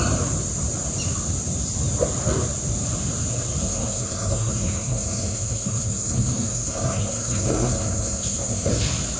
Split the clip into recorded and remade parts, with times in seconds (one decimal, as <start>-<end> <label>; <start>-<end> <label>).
0.0-3.6 recorded; 3.6-8.7 remade; 8.7-9.2 recorded